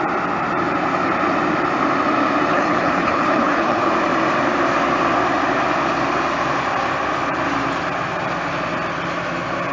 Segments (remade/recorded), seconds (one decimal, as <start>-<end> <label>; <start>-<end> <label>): 0.0-2.5 recorded; 2.5-3.9 remade; 3.9-9.7 recorded